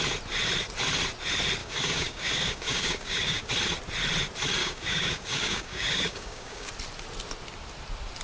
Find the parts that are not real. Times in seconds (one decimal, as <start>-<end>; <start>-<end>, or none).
1.6-3.5; 4.6-6.7